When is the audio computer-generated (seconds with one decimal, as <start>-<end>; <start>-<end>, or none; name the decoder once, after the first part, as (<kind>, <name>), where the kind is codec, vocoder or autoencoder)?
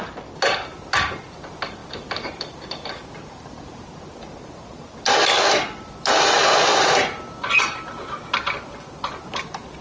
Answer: 1.8-2.9 (vocoder, BigVGAN v2); 6.7-7.6